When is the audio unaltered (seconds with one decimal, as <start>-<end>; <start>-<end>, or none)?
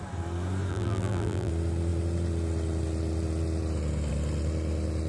0.0-0.7; 1.5-5.1